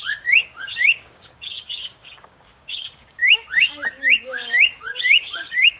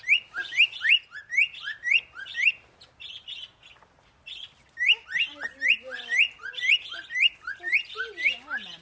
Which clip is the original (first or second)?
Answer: second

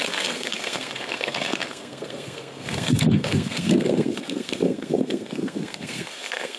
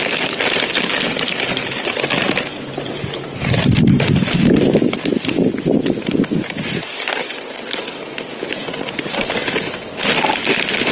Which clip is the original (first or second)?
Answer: second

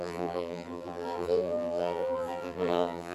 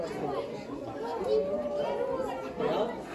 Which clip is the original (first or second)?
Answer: second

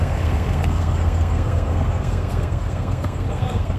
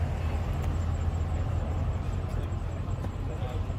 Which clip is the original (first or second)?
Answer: second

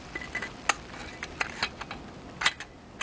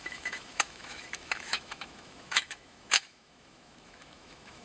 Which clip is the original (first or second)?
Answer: first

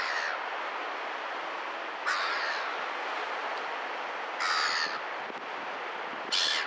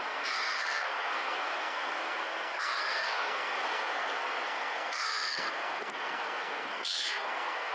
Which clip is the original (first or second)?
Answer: first